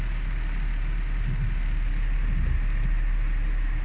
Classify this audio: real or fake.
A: real